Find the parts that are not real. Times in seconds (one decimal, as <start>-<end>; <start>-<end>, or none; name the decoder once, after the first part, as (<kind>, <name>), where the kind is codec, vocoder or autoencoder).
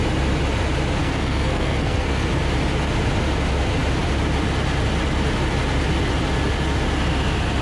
1.0-2.3 (codec, SNAC)